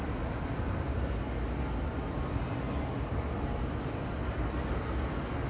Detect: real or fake real